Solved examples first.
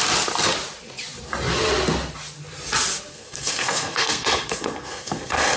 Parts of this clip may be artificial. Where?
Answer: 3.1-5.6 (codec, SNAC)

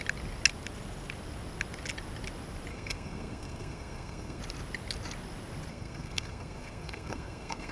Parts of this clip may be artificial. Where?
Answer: 2.7-4.4 (codec, SNAC); 5.7-7.7

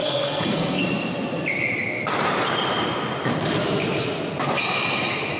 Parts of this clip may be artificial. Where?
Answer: 0.0-0.8 (codec, SNAC)

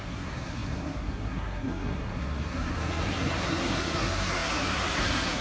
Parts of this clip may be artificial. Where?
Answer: 0.0-5.4 (codec, SNAC)

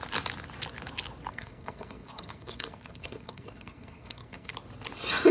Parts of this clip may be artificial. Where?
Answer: 1.3-4.5 (codec, SNAC)

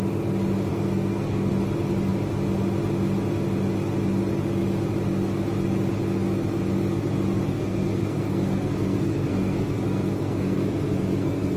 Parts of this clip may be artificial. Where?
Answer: 0.7-1.5 (codec, SNAC); 7.5-11.6